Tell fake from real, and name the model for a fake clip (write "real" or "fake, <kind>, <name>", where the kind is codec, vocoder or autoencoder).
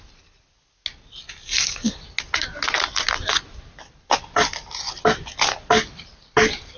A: real